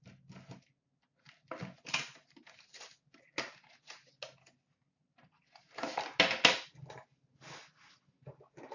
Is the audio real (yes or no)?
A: yes